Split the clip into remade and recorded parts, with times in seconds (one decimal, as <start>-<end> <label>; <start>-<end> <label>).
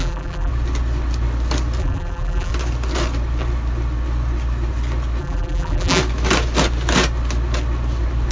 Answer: 0.0-0.5 remade; 0.5-1.8 recorded; 1.8-2.5 remade; 2.5-5.2 recorded; 5.2-6.0 remade; 6.0-8.3 recorded